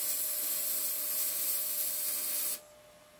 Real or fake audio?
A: real